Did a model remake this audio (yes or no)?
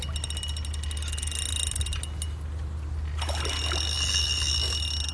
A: no